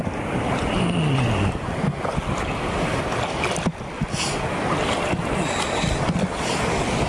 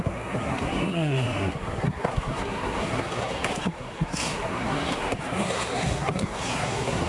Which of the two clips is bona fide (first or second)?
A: first